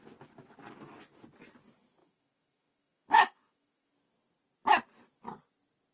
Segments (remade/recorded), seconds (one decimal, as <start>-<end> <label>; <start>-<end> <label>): 0.0-2.0 recorded; 2.0-3.9 remade; 3.9-5.9 recorded